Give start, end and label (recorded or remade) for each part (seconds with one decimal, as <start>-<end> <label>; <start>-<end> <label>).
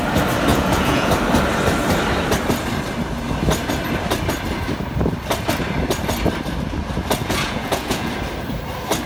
0.0-0.5 recorded; 0.5-1.1 remade; 1.1-7.2 recorded; 7.2-8.1 remade; 8.1-9.1 recorded